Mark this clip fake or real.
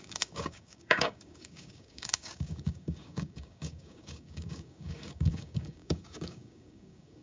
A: fake